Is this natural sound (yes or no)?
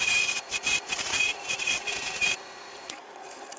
no